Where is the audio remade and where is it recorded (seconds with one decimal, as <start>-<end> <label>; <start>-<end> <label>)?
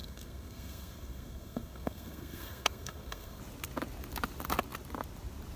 0.0-3.4 remade; 3.4-5.6 recorded